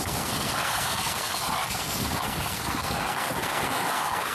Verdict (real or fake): fake